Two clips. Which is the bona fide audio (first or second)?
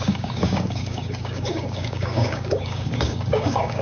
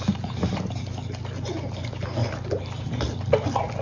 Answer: second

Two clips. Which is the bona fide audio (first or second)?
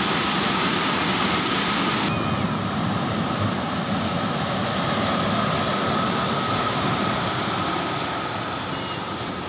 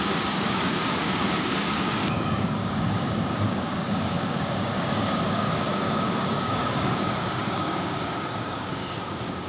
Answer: first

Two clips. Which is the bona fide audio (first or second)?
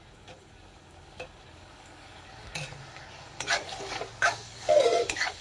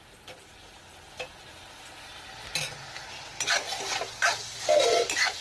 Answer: second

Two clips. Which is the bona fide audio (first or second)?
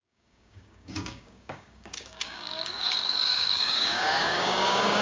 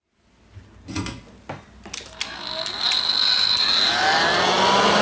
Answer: second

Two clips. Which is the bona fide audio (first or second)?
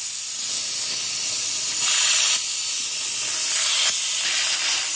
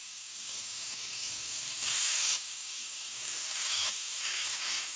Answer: first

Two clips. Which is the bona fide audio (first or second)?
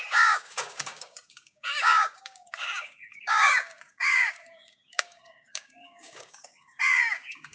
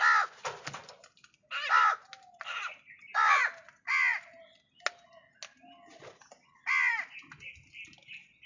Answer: second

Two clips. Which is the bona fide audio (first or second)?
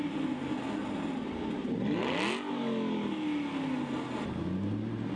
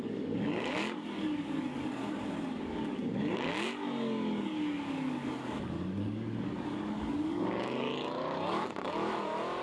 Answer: first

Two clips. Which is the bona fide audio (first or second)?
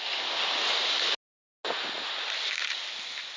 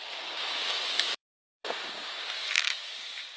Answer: first